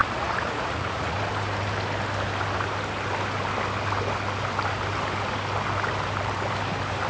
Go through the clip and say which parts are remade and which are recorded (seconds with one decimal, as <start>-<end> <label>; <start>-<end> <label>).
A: 0.0-1.2 remade; 1.2-7.1 recorded